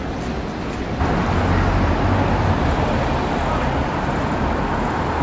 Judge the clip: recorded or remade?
recorded